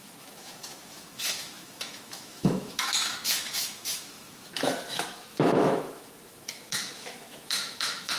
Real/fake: fake